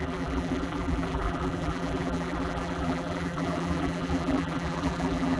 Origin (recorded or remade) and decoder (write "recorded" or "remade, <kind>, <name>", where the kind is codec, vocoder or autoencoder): remade, vocoder, BigVGAN v2